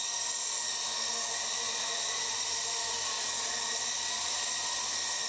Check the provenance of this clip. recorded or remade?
recorded